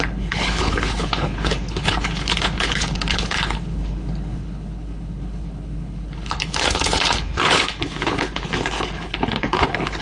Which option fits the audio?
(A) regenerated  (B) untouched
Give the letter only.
A